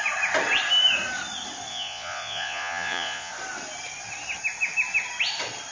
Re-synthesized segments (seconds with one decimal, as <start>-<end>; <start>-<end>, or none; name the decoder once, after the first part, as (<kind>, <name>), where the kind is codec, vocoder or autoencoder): 1.7-3.3 (vocoder, Vocos)